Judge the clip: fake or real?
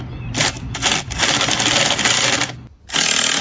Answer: real